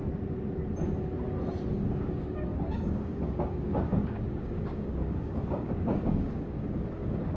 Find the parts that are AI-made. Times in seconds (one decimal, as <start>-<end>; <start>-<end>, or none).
1.7-7.4